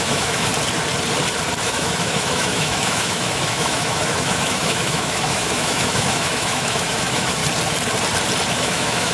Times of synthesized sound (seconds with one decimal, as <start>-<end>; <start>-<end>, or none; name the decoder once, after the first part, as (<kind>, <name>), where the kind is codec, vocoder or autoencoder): 0.0-0.5 (autoencoder, DAC-VAE); 1.6-7.4; 8.5-9.1